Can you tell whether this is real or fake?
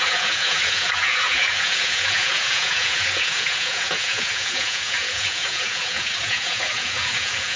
fake